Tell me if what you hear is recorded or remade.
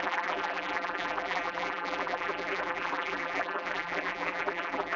remade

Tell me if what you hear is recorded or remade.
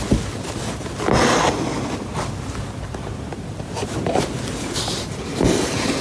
recorded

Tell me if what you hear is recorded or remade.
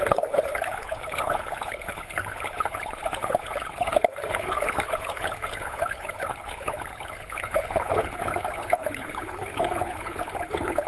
remade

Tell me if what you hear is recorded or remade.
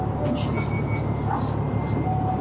recorded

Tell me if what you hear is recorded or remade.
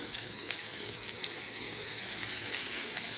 remade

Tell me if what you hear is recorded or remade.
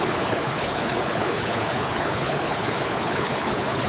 remade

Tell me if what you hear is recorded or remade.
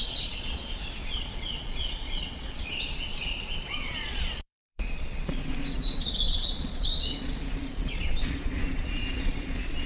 remade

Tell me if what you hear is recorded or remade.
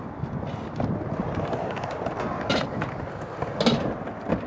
recorded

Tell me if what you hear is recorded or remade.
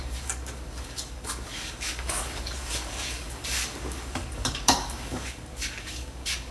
remade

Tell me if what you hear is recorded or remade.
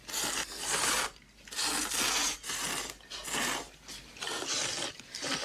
recorded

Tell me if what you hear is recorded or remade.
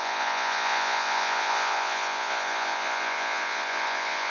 remade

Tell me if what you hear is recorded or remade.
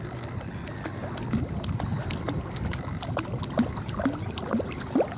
recorded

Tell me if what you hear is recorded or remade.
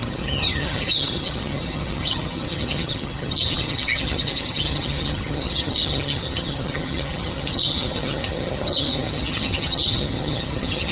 remade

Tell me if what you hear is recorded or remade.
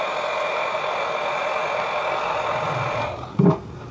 recorded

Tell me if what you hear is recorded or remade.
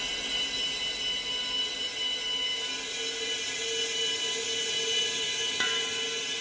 recorded